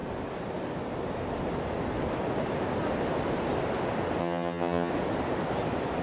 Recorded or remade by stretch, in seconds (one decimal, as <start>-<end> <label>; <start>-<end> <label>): 0.0-4.2 recorded; 4.2-4.9 remade; 4.9-6.0 recorded